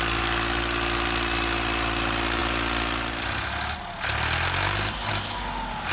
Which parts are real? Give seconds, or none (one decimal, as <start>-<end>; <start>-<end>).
0.0-5.9

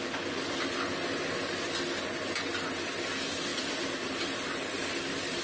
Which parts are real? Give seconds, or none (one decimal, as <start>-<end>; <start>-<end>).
0.0-5.4

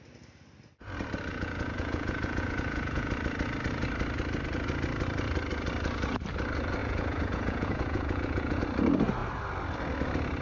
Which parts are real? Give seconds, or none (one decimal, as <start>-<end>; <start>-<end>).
0.0-1.3; 3.1-6.8; 8.6-10.4

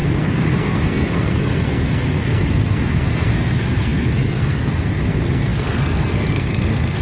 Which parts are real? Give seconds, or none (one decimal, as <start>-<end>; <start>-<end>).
none

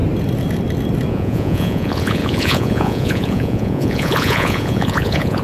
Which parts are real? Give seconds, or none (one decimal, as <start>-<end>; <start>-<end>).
0.0-1.1

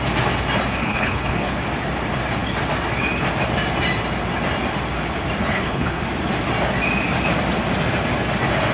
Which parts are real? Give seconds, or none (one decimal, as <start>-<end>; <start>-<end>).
0.0-0.8; 1.5-5.5; 6.0-8.7

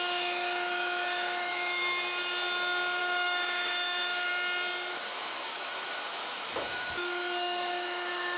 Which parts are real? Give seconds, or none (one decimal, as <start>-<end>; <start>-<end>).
1.8-3.0; 4.3-4.9

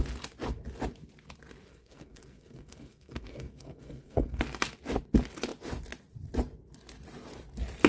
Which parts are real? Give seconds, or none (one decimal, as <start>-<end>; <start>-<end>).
0.0-1.7; 4.4-7.9